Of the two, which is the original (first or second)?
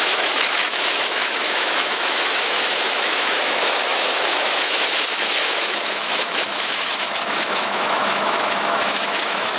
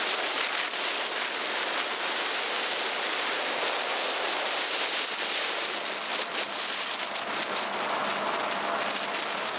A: second